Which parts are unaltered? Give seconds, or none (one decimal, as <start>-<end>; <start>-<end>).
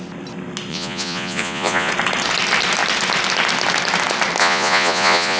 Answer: 0.0-0.7; 1.9-4.4